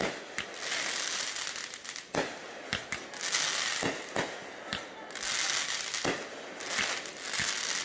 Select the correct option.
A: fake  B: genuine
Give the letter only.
B